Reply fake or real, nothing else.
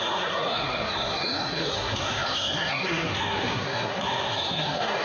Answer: fake